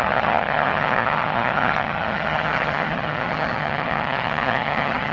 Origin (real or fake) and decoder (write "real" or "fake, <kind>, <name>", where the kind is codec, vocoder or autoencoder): fake, vocoder, HiFi-GAN